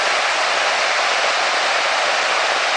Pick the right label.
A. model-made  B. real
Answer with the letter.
B